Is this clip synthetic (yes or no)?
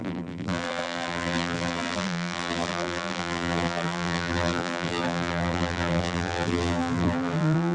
yes